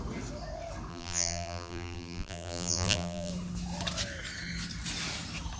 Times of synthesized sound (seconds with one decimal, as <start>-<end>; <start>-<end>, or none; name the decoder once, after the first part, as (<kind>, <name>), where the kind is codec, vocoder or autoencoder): 0.9-3.3 (vocoder, BigVGAN v2)